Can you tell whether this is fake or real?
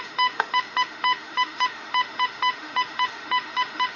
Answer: fake